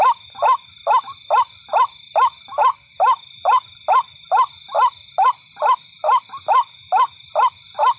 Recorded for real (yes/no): yes